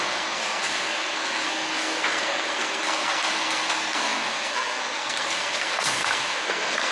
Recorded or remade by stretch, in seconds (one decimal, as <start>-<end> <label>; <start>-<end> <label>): 0.0-6.9 remade